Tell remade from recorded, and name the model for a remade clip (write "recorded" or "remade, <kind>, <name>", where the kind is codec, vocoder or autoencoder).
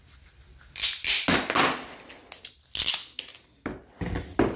recorded